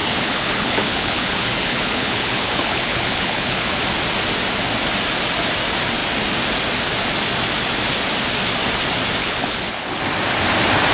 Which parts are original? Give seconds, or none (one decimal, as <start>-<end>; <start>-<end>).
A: 3.8-9.2; 10.0-10.9